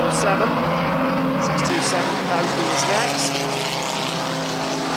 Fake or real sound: real